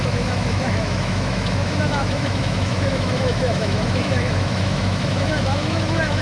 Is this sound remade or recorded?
remade